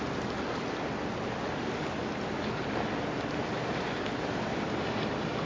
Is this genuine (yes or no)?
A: yes